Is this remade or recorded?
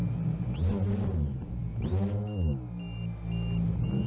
recorded